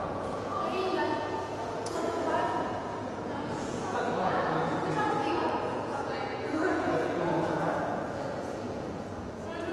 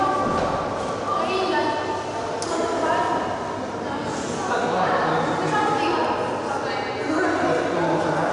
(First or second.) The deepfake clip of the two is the first